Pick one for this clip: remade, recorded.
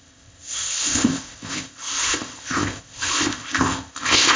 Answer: remade